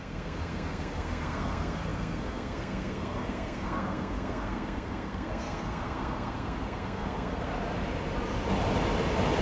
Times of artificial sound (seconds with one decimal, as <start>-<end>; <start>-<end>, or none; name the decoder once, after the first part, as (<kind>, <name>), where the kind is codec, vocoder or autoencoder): 0.0-7.5 (codec, SNAC)